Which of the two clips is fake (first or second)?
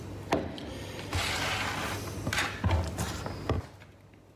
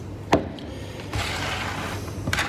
second